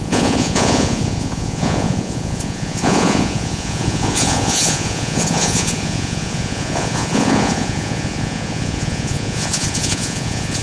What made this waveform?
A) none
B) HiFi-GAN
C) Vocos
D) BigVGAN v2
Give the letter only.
C